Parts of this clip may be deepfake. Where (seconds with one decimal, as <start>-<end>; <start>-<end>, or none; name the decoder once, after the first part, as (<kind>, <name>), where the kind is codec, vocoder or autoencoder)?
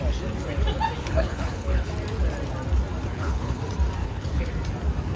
1.0-1.9 (codec, HILCodec); 3.1-3.6; 4.0-4.5